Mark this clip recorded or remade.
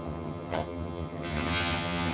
remade